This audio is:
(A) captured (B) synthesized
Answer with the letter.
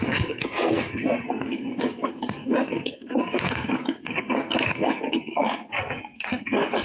B